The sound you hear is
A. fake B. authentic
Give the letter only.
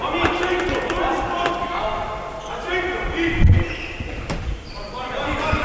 B